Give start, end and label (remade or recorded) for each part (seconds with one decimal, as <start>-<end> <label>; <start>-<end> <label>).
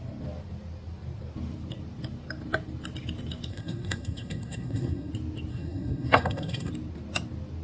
0.0-3.5 recorded; 3.5-5.1 remade; 5.1-5.5 recorded; 5.5-6.7 remade; 6.7-7.6 recorded